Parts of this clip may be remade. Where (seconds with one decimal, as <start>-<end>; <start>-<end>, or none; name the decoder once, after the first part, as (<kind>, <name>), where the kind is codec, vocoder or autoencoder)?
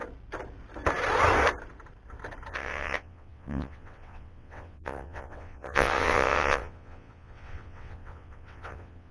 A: 2.5-9.1 (vocoder, WaveNeXt)